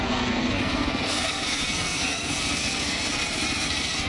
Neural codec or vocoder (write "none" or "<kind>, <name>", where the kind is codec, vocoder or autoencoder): codec, SNAC